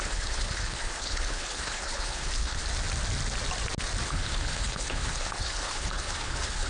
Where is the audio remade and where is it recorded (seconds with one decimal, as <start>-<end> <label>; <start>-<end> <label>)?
0.0-2.6 remade; 2.6-4.1 recorded; 4.1-6.7 remade

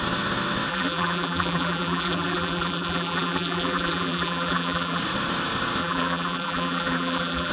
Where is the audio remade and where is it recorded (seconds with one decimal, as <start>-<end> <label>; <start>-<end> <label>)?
0.0-0.7 recorded; 0.7-5.0 remade; 5.0-5.8 recorded; 5.8-7.5 remade

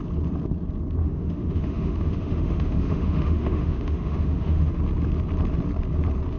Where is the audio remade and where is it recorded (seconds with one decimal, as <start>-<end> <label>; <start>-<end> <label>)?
0.0-1.0 recorded; 1.0-4.8 remade; 4.8-6.4 recorded

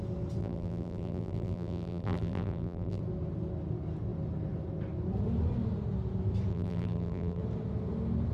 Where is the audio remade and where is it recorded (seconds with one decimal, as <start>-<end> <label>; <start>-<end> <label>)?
0.0-0.4 recorded; 0.4-3.0 remade; 3.0-6.5 recorded; 6.5-7.4 remade; 7.4-8.3 recorded